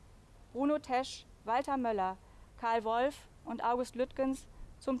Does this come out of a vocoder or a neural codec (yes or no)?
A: no